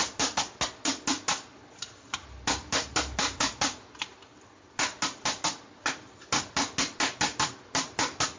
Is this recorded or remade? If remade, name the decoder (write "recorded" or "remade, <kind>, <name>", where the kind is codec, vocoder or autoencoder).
recorded